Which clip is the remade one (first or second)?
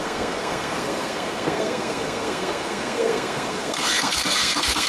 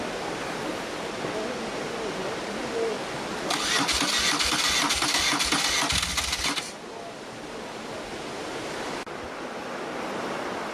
first